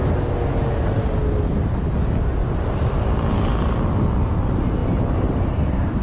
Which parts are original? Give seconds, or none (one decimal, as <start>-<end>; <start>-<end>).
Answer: 0.0-2.4; 3.3-6.0